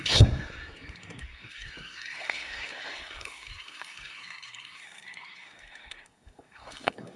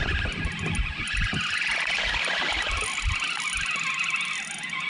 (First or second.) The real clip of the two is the second